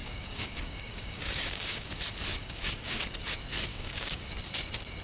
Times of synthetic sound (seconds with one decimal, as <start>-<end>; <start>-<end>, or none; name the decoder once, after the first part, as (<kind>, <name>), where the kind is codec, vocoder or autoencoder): 0.0-2.0 (codec, DAC); 2.4-3.0; 3.7-4.3